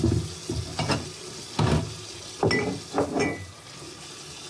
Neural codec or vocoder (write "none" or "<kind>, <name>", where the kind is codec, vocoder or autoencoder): none